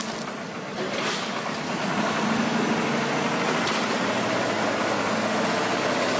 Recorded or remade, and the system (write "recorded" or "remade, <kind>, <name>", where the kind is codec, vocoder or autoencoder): recorded